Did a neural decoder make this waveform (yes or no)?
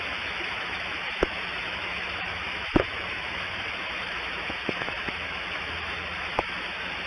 yes